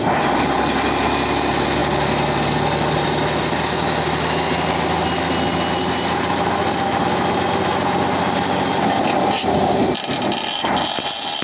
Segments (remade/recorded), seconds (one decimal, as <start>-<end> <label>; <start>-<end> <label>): 0.0-11.4 recorded